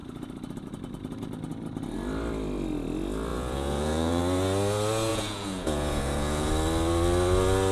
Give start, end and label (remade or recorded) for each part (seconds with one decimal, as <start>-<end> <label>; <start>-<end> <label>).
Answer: 0.0-3.3 recorded; 3.3-4.2 remade; 4.2-5.1 recorded; 5.1-6.5 remade; 6.5-7.7 recorded

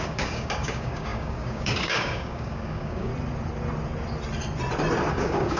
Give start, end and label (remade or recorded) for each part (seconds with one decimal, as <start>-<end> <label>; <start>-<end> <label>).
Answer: 0.0-3.1 remade; 3.1-5.1 recorded; 5.1-5.6 remade

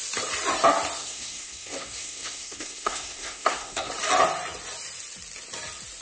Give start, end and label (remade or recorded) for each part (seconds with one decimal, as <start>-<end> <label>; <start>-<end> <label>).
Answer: 0.0-1.0 recorded; 1.0-3.9 remade; 3.9-6.0 recorded

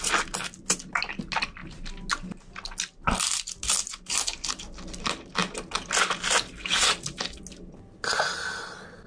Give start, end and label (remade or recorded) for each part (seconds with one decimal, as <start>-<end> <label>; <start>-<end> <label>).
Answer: 0.0-9.1 recorded

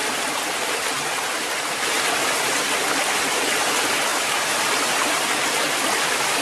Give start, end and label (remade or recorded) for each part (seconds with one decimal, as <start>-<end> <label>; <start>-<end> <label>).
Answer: 0.0-6.4 recorded